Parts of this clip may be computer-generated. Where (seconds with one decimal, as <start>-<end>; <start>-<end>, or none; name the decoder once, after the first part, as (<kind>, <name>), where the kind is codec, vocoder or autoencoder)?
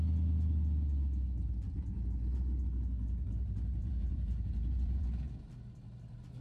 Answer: 3.8-5.4 (vocoder, Vocos)